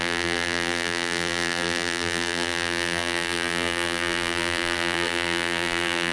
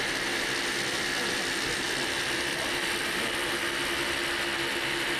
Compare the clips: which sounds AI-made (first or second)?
first